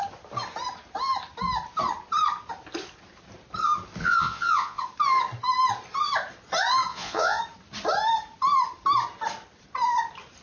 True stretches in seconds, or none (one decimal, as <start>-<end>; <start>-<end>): 0.0-4.0; 4.8-6.9; 7.4-10.4